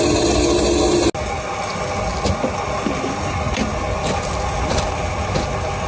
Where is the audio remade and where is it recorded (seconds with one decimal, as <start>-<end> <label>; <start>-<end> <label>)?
0.0-5.9 recorded